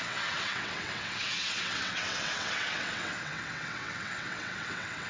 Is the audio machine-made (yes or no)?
yes